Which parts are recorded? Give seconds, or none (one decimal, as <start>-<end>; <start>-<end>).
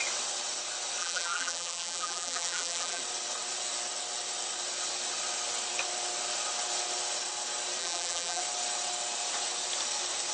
0.0-1.0; 3.0-7.8; 8.4-10.3